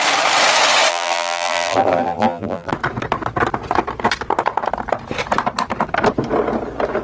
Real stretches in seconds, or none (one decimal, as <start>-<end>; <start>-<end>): 0.0-0.9; 2.7-7.0